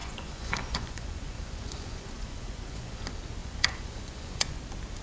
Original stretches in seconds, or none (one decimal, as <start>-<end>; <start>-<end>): 3.0-3.4; 4.6-5.0